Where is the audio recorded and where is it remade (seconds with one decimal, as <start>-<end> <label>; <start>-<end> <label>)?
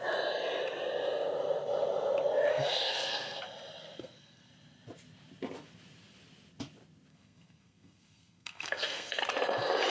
0.0-2.5 recorded; 2.5-3.4 remade; 3.4-3.8 recorded; 3.8-4.5 remade; 4.5-7.1 recorded; 7.1-9.2 remade; 9.2-9.9 recorded